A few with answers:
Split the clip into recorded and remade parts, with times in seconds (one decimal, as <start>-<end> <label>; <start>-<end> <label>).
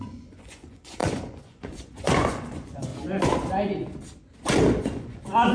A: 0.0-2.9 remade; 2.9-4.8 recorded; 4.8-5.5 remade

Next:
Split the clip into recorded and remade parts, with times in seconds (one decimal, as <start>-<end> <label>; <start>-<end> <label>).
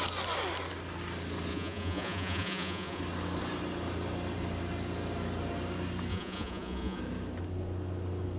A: 0.0-1.5 recorded; 1.5-3.0 remade; 3.0-6.1 recorded; 6.1-7.0 remade; 7.0-8.4 recorded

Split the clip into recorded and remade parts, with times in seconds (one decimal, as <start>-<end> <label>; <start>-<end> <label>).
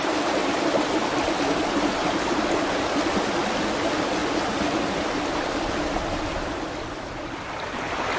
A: 0.0-8.2 recorded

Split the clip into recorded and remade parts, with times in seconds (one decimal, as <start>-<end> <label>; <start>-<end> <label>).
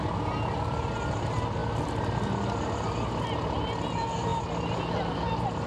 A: 0.0-5.7 recorded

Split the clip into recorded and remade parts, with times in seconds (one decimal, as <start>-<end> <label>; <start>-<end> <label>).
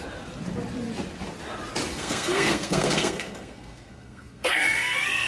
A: 0.0-1.9 recorded; 1.9-5.3 remade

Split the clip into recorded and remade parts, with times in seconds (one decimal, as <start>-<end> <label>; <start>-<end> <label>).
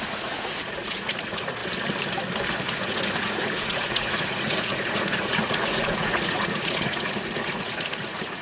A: 0.0-1.6 remade; 1.6-2.5 recorded; 2.5-8.4 remade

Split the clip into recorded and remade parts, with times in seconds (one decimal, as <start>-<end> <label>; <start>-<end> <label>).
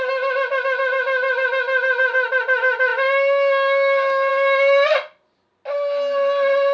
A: 0.0-6.7 recorded